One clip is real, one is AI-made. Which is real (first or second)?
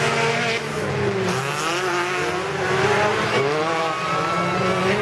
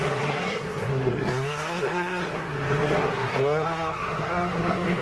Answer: first